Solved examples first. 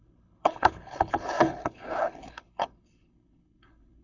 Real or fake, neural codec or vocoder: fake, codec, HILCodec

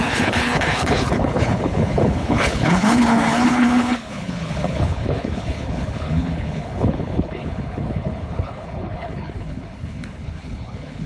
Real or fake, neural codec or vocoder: fake, codec, HILCodec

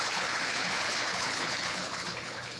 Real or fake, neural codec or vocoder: fake, codec, HILCodec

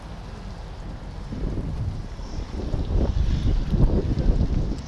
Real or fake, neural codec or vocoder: real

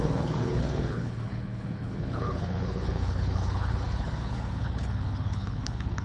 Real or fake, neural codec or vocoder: fake, codec, HILCodec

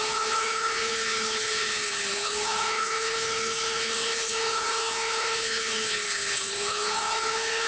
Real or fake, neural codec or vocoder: fake, codec, HILCodec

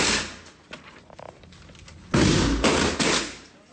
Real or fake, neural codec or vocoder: real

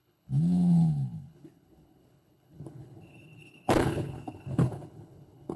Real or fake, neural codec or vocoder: fake, codec, HILCodec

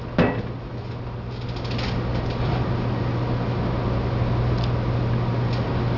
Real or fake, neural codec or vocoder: real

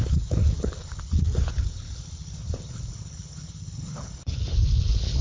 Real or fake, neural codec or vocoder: fake, codec, HILCodec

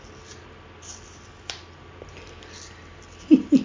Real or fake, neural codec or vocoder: real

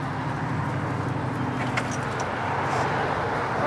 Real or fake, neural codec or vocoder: real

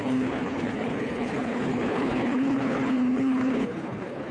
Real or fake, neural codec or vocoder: fake, codec, HILCodec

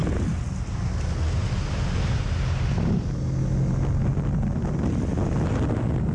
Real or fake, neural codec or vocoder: real